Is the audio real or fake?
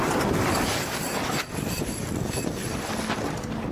real